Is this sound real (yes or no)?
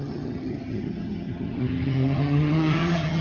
no